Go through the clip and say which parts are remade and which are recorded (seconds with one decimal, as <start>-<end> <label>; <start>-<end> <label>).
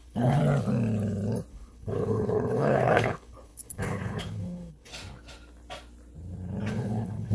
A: 0.0-0.4 remade; 0.4-1.5 recorded; 1.5-4.9 remade; 4.9-6.7 recorded; 6.7-7.3 remade